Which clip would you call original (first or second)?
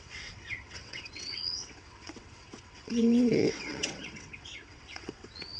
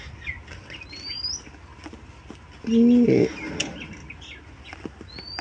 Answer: second